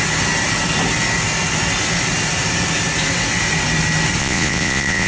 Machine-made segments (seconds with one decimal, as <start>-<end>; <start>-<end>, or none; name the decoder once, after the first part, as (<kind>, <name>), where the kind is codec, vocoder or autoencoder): 4.2-5.1 (vocoder, Vocos)